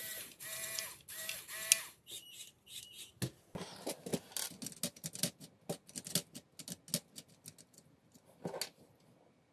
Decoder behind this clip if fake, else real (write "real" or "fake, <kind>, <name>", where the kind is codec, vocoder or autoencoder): real